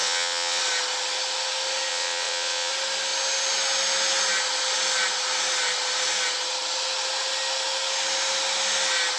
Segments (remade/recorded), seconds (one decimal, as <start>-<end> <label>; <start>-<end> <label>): 0.0-0.6 remade; 0.6-1.9 recorded; 1.9-2.7 remade; 2.7-9.2 recorded